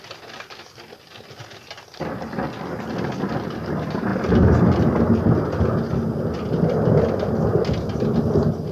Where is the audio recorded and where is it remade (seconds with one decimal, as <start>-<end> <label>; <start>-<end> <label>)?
0.0-8.7 recorded